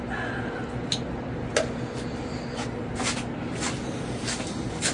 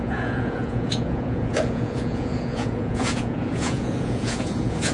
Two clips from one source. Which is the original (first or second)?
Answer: first